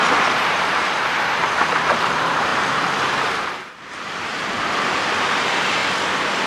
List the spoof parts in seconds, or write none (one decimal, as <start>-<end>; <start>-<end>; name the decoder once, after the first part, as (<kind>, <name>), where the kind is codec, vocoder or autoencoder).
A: 0.0-5.8 (vocoder, BigVGAN v2)